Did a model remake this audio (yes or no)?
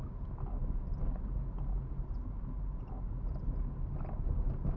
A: no